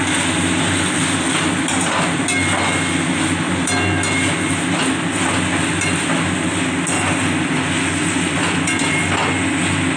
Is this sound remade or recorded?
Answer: recorded